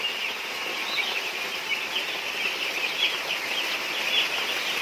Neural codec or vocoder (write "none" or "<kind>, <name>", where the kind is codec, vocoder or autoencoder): none